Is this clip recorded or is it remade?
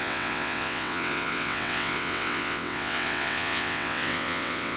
remade